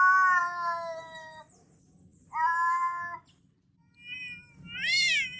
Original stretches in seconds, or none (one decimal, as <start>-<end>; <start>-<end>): 0.0-5.4